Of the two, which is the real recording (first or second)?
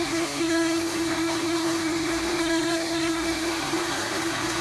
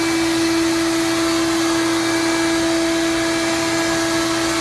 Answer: second